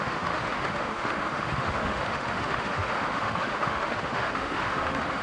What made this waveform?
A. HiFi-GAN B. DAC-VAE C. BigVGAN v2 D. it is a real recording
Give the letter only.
B